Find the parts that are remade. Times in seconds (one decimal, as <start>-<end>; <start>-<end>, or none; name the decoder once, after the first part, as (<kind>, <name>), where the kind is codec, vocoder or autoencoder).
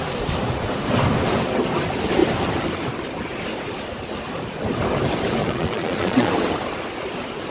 5.4-6.3 (vocoder, Vocos)